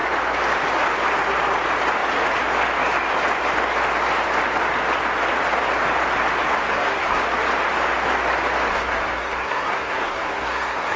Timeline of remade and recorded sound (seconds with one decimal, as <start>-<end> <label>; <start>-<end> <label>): 0.0-6.7 recorded; 6.7-7.2 remade; 7.2-8.7 recorded; 8.7-11.0 remade